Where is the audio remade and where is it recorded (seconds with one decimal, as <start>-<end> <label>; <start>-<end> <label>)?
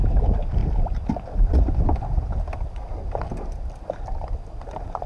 0.0-5.1 recorded